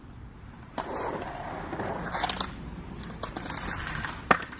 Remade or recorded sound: recorded